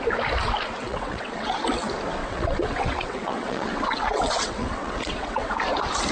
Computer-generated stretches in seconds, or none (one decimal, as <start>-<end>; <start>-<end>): 0.8-1.6; 2.2-5.5